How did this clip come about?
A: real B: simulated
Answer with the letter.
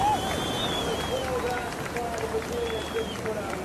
A